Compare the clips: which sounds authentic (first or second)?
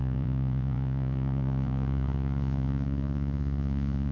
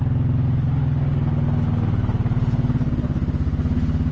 second